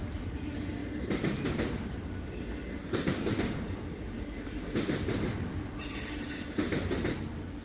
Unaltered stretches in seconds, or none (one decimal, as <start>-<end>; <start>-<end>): 0.0-2.8; 3.3-7.6

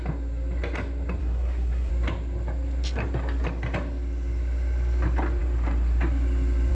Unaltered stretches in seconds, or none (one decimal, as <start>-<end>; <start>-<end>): 0.0-1.2; 1.9-6.7

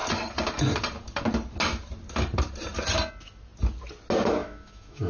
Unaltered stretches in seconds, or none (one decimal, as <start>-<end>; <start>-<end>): 0.0-4.4